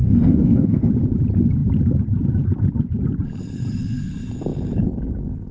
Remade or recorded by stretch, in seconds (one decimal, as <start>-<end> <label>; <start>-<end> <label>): 0.0-0.9 remade; 0.9-5.5 recorded